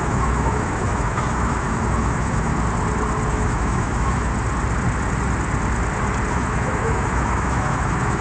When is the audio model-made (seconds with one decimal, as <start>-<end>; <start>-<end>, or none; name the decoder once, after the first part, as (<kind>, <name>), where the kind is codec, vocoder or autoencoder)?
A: 0.0-2.5 (autoencoder, DAC-VAE); 3.3-4.3; 6.3-8.2